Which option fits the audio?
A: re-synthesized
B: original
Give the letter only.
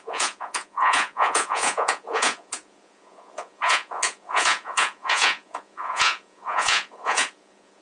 A